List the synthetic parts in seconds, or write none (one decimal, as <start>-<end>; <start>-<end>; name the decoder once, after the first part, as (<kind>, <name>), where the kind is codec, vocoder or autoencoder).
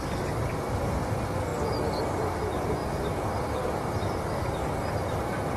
none